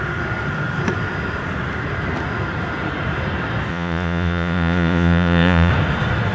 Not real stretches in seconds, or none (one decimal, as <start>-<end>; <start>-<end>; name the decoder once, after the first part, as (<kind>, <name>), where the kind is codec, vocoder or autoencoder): 3.7-5.7 (vocoder, Vocos)

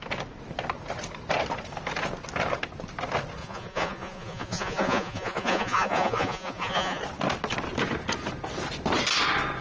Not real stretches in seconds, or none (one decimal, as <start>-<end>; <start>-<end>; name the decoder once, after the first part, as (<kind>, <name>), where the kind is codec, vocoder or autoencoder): 3.4-7.0 (vocoder, Vocos)

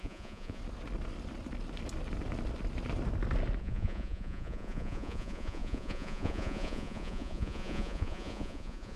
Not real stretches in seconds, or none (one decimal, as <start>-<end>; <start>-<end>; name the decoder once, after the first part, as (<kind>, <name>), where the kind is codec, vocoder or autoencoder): 0.0-0.6 (vocoder, Vocos); 3.6-9.0

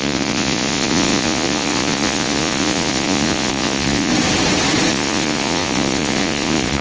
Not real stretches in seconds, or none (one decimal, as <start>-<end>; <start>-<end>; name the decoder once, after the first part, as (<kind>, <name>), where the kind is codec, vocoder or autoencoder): 0.0-4.1 (vocoder, Vocos); 4.9-6.8

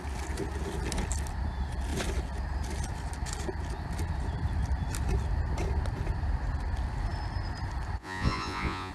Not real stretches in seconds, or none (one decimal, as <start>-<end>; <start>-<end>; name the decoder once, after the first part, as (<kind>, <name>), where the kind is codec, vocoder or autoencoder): 8.0-8.9 (vocoder, Vocos)

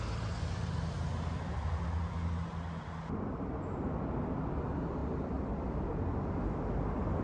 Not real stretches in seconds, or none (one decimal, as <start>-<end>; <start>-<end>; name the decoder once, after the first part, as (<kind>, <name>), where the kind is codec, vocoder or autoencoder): none